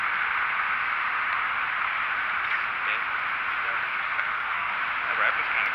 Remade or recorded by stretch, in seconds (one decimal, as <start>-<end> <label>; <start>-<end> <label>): 0.0-3.9 recorded; 3.9-4.7 remade; 4.7-5.7 recorded